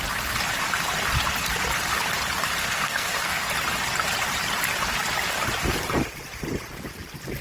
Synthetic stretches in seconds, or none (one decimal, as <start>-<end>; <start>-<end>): 2.6-3.5

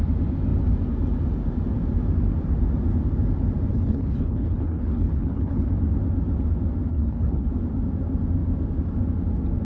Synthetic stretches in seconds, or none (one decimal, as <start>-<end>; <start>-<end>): 3.7-5.7; 6.9-7.5

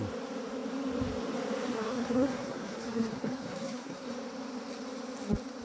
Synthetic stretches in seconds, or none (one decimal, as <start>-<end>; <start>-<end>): 1.7-4.1